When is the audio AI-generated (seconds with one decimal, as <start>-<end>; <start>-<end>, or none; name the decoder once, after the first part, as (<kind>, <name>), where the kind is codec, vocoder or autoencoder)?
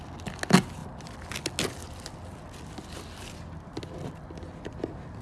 none